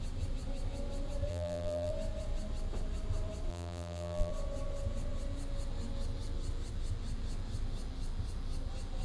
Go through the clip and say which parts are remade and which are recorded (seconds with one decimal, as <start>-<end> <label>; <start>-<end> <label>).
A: 0.0-1.3 recorded; 1.3-1.9 remade; 1.9-3.5 recorded; 3.5-4.3 remade; 4.3-9.0 recorded

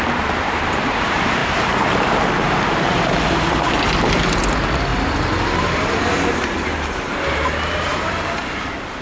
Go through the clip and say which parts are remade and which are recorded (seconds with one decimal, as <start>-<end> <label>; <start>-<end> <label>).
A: 0.0-4.9 remade; 4.9-5.6 recorded; 5.6-9.0 remade

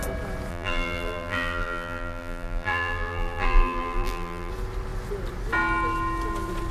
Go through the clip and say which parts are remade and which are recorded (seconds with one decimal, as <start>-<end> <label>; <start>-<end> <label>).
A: 0.0-0.5 recorded; 0.5-4.5 remade; 4.5-6.7 recorded

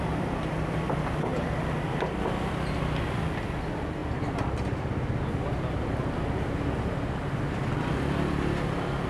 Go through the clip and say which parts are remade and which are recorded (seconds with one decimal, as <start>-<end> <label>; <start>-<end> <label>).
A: 0.0-1.3 recorded; 1.3-2.7 remade; 2.7-9.1 recorded

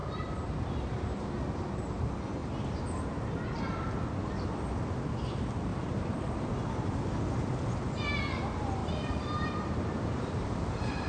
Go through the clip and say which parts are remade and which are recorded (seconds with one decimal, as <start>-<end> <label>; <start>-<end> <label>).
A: 0.0-1.4 remade; 1.4-5.7 recorded; 5.7-6.5 remade; 6.5-8.8 recorded; 8.8-11.1 remade

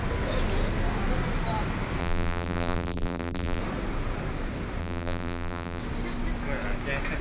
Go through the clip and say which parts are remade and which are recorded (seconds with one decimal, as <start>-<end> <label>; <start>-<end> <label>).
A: 0.0-2.0 recorded; 2.0-3.6 remade; 3.6-4.8 recorded; 4.8-5.8 remade; 5.8-7.2 recorded

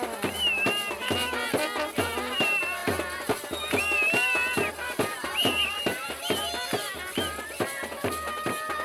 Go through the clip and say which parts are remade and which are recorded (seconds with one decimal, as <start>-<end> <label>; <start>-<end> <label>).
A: 0.0-5.1 recorded; 5.1-5.8 remade; 5.8-8.8 recorded

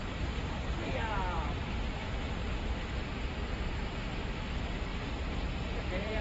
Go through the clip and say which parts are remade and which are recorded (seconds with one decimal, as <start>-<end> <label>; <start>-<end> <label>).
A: 0.0-4.9 remade; 4.9-5.8 recorded; 5.8-6.2 remade